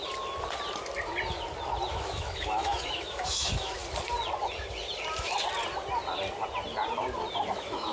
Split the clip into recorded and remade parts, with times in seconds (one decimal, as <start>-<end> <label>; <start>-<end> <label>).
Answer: 0.0-1.9 recorded; 1.9-3.8 remade; 3.8-7.5 recorded; 7.5-7.9 remade